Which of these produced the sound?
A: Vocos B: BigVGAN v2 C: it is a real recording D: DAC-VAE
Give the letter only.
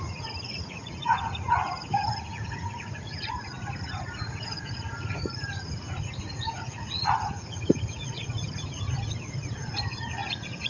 A